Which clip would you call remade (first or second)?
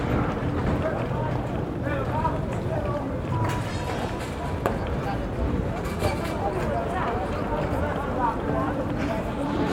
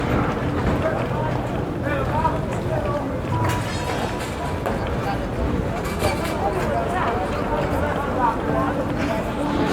first